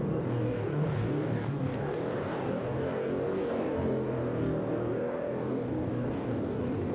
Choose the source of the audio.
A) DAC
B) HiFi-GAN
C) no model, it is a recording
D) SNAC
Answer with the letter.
A